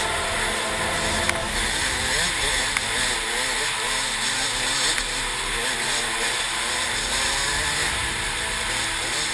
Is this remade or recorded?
recorded